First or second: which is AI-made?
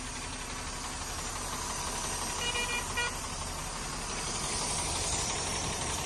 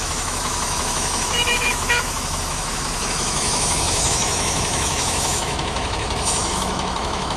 second